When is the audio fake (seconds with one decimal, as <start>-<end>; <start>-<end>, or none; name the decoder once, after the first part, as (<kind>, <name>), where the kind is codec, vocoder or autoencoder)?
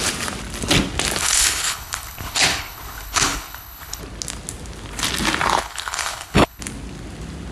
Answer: 1.2-4.0 (codec, HILCodec); 5.6-6.6